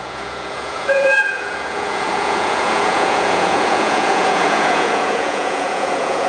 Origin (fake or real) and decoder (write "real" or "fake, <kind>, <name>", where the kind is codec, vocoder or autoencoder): fake, vocoder, Vocos